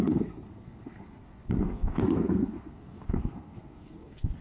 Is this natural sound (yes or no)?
no